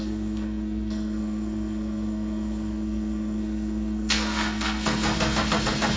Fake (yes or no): yes